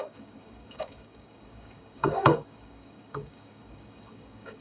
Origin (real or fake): fake